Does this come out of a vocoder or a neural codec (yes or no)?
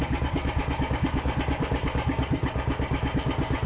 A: yes